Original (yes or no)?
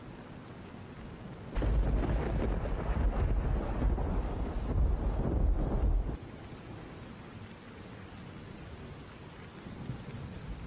yes